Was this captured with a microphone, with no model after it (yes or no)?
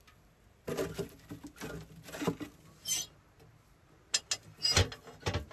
yes